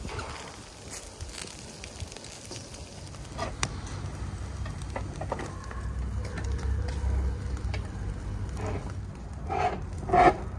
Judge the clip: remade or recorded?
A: recorded